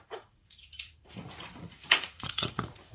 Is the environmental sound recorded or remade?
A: remade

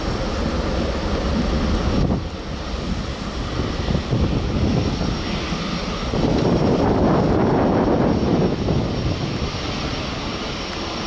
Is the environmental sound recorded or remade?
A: recorded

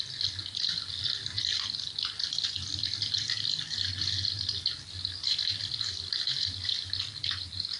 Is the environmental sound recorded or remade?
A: recorded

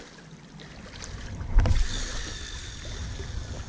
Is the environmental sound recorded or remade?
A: recorded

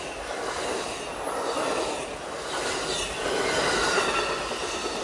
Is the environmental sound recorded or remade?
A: recorded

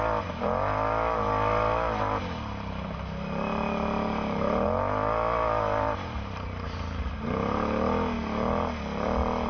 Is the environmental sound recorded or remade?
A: recorded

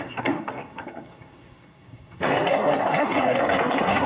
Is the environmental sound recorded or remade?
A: remade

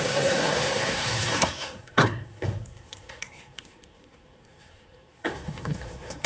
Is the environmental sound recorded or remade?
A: remade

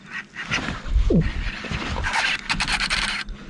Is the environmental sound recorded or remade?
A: recorded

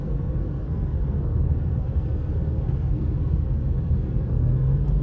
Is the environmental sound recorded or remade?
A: remade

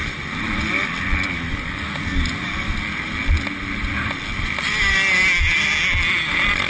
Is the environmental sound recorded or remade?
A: recorded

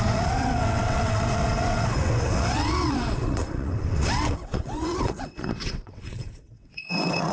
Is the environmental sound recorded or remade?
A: remade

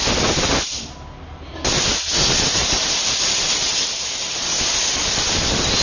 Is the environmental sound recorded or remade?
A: recorded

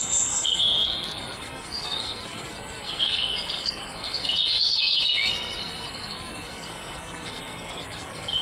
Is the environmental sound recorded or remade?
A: remade